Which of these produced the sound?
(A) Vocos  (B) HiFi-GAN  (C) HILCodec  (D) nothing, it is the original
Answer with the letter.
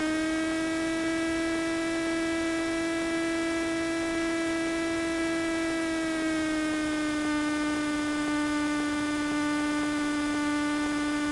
D